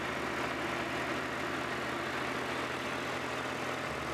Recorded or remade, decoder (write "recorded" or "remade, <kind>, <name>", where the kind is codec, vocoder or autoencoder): recorded